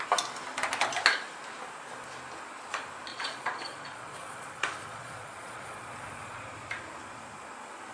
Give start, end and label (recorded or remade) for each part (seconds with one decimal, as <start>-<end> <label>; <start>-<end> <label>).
0.0-3.1 recorded; 3.1-6.4 remade; 6.4-7.9 recorded

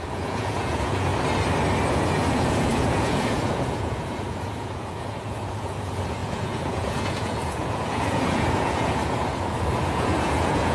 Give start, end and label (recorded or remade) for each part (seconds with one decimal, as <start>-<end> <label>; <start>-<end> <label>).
0.0-1.1 remade; 1.1-1.9 recorded; 1.9-10.7 remade

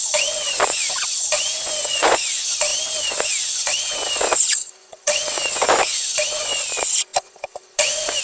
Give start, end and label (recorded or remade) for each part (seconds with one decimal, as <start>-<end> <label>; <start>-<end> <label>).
0.0-8.2 remade

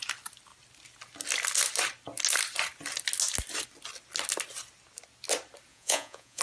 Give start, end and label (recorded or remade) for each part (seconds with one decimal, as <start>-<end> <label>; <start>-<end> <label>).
0.0-5.7 recorded; 5.7-6.4 remade

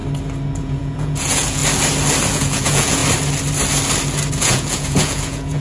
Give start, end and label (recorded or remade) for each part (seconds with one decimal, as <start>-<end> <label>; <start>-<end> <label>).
0.0-0.6 recorded; 0.6-1.6 remade; 1.6-2.3 recorded; 2.3-3.0 remade; 3.0-4.3 recorded; 4.3-5.6 remade